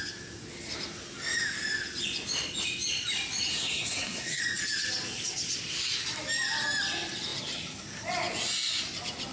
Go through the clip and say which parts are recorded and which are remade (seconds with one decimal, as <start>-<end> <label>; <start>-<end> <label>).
0.0-3.5 recorded; 3.5-4.4 remade; 4.4-9.3 recorded